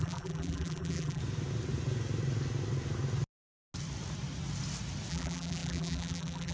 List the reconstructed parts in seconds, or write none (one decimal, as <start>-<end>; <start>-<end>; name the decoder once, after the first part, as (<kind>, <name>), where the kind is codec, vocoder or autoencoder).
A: 0.0-1.2 (vocoder, BigVGAN v2); 5.1-6.5